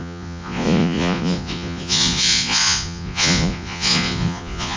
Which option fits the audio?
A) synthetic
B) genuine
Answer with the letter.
A